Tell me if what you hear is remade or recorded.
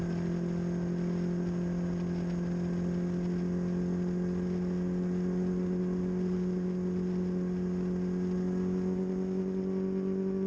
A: recorded